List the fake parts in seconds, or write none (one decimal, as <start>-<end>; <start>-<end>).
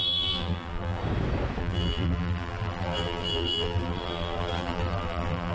0.0-1.0; 1.6-5.5